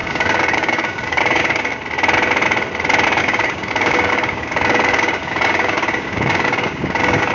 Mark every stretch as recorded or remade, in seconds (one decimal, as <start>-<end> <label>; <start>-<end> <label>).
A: 0.0-1.7 remade; 1.7-3.2 recorded; 3.2-7.3 remade

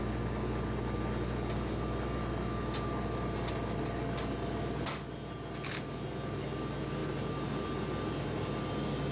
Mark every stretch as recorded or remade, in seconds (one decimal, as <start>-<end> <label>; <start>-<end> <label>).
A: 0.0-9.1 recorded

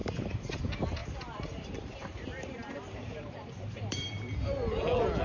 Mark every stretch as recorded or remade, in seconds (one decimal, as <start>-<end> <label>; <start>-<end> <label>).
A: 0.0-0.6 remade; 0.6-1.0 recorded; 1.0-4.1 remade; 4.1-5.2 recorded

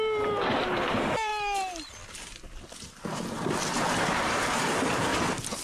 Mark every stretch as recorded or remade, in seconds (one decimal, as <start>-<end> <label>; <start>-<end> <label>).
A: 0.0-1.3 remade; 1.3-4.1 recorded; 4.1-5.1 remade; 5.1-5.6 recorded